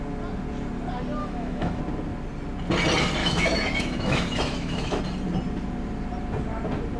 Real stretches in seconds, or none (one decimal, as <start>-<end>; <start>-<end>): 0.0-1.2; 1.8-3.2; 5.0-7.0